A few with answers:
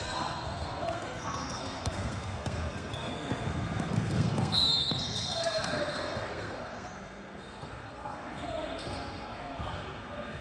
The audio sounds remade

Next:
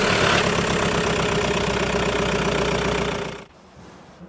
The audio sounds recorded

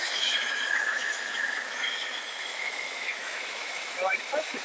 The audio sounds remade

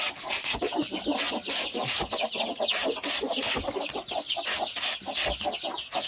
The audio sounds recorded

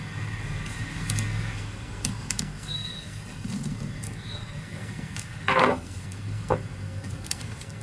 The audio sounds remade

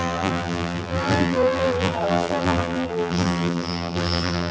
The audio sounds remade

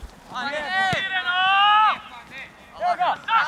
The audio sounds recorded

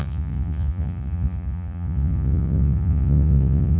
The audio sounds remade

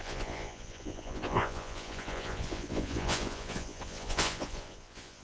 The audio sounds remade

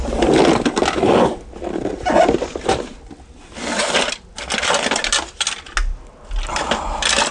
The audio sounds recorded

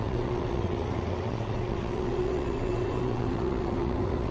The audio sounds remade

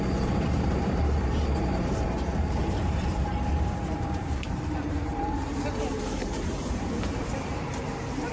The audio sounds remade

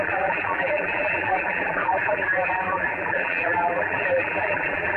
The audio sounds remade